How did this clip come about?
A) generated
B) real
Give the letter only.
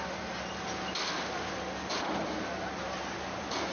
B